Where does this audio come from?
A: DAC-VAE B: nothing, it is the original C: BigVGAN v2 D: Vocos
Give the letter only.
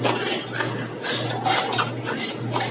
C